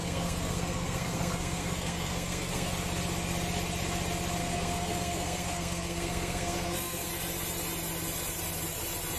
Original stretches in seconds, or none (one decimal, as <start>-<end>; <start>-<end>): 2.7-4.4; 7.1-9.2